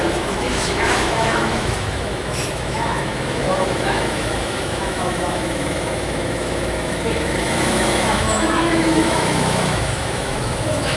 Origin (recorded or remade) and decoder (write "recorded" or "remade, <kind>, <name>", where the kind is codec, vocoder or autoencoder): remade, autoencoder, DAC-VAE